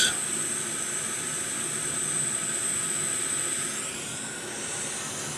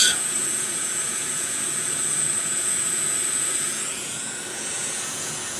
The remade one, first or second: second